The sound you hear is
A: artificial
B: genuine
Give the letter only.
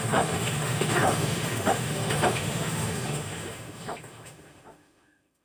A